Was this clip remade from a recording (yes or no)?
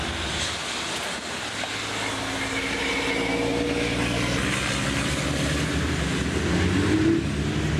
no